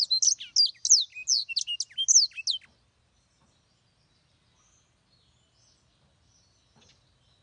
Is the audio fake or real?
real